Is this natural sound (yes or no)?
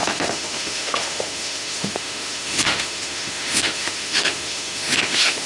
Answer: no